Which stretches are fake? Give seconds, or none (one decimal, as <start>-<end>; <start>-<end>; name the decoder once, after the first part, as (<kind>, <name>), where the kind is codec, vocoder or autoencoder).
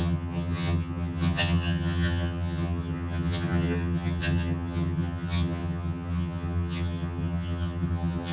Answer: 0.0-8.3 (vocoder, HiFi-GAN)